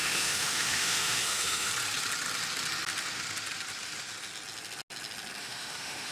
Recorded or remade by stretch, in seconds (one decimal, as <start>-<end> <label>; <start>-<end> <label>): 0.0-1.7 remade; 1.7-5.4 recorded; 5.4-6.1 remade